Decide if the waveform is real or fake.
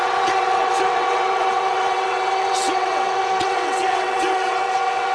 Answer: fake